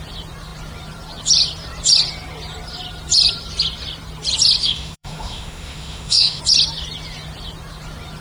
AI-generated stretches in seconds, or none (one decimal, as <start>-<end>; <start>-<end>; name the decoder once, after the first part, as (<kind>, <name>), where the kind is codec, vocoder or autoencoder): 4.6-6.4 (autoencoder, DAC-VAE)